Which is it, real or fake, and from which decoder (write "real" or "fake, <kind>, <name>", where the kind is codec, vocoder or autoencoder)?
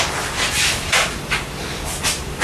real